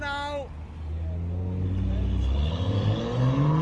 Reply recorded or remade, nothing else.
recorded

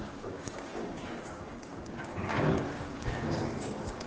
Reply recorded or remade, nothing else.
remade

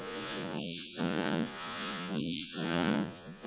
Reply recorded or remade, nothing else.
remade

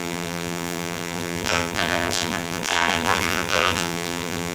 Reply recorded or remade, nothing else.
remade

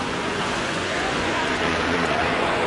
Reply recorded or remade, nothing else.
remade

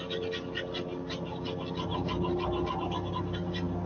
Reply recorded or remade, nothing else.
recorded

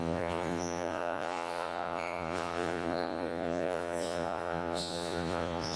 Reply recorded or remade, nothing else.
remade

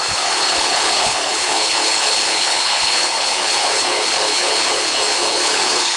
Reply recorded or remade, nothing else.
remade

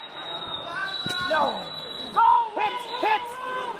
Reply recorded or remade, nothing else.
remade